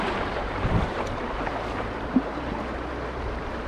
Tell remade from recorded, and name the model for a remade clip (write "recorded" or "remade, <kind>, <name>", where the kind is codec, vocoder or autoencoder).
remade, vocoder, BigVGAN v2